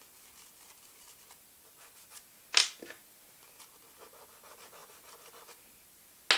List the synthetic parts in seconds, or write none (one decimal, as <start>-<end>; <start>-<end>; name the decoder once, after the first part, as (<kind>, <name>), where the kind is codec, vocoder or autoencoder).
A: 4.8-5.5 (vocoder, BigVGAN v2)